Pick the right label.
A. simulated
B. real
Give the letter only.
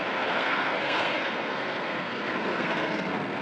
A